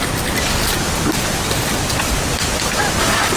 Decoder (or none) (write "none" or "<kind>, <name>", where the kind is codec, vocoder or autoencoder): vocoder, BigVGAN v2